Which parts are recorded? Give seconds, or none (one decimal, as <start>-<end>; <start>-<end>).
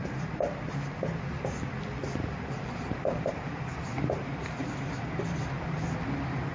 0.9-2.0; 5.9-6.5